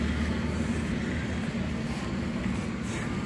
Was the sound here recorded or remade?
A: recorded